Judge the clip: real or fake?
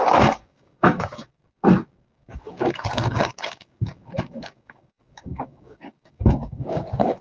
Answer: fake